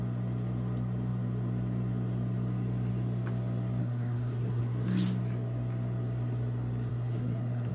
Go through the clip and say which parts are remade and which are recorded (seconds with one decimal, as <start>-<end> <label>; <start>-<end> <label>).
0.0-3.8 recorded; 3.8-4.6 remade; 4.6-6.9 recorded; 6.9-7.7 remade